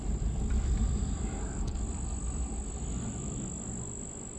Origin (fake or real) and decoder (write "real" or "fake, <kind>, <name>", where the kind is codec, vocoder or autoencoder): real